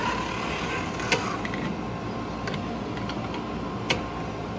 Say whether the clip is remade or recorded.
recorded